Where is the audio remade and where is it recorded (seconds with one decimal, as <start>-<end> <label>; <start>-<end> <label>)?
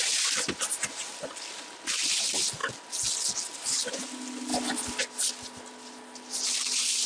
0.0-7.1 recorded